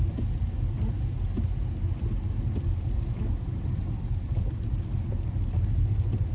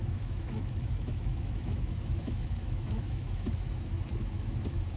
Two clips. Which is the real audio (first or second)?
first